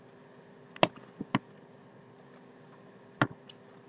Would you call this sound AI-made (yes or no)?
no